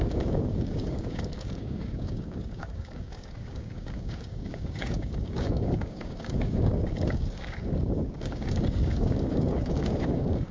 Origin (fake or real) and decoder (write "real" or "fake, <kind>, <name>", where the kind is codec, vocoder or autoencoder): fake, codec, DAC